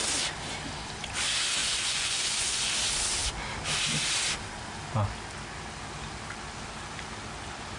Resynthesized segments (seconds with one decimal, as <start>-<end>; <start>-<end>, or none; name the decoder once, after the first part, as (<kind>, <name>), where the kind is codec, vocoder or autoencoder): 1.6-2.7 (vocoder, Vocos)